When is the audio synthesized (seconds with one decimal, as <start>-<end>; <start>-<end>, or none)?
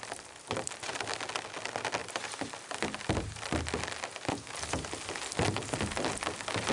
none